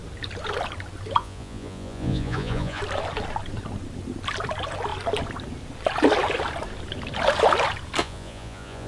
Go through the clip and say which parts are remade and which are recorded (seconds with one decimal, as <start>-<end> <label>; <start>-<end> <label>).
0.0-1.2 recorded; 1.2-2.8 remade; 2.8-8.0 recorded; 8.0-8.9 remade

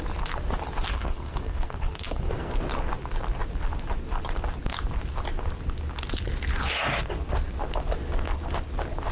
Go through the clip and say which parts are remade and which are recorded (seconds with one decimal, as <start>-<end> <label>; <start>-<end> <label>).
0.0-0.9 recorded; 0.9-2.6 remade; 2.6-9.1 recorded

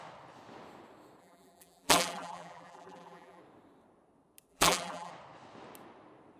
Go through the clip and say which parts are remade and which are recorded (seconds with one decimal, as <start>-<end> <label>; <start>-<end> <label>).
0.0-1.2 recorded; 1.2-3.4 remade; 3.4-4.5 recorded; 4.5-5.1 remade; 5.1-6.4 recorded

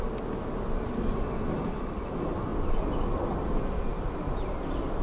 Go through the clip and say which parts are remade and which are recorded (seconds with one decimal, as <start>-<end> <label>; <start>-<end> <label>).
0.0-2.5 recorded; 2.5-3.2 remade; 3.2-3.9 recorded; 3.9-4.5 remade; 4.5-5.0 recorded

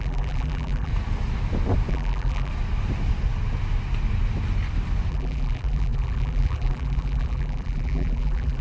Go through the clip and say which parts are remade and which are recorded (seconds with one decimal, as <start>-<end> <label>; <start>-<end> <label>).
0.0-0.9 remade; 0.9-1.9 recorded; 1.9-2.5 remade; 2.5-5.1 recorded; 5.1-8.6 remade